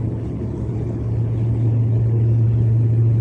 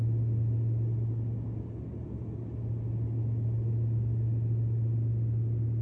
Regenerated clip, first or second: first